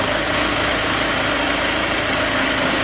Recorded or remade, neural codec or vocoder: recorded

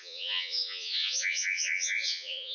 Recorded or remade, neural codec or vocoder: remade, vocoder, Vocos